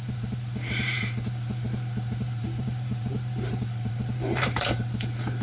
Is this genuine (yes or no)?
no